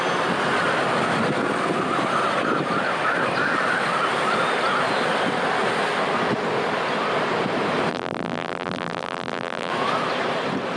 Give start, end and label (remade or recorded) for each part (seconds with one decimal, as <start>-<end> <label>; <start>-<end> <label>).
0.0-7.9 recorded; 7.9-9.7 remade; 9.7-10.8 recorded